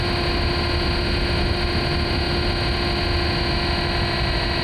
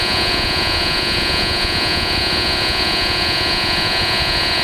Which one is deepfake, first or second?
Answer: second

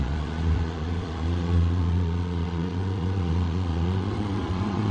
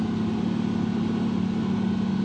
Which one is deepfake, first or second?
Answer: first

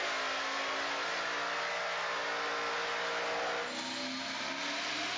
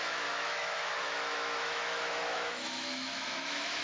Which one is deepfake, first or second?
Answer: second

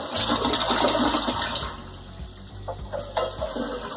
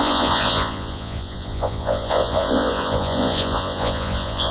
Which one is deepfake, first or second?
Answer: second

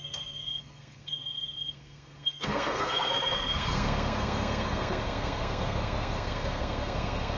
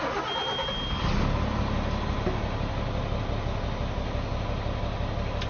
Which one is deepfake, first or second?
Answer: first